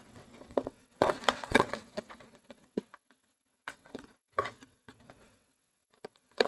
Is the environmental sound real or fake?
fake